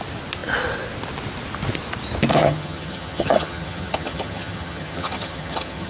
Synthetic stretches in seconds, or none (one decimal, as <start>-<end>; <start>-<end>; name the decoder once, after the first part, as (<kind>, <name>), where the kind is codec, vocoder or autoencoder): 2.3-5.9 (vocoder, HiFi-GAN)